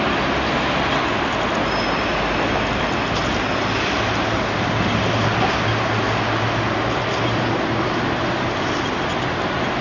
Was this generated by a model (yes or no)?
no